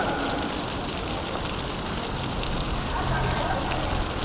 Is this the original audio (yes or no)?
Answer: yes